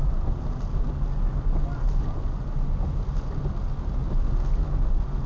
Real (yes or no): yes